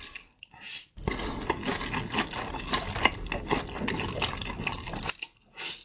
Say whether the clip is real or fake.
real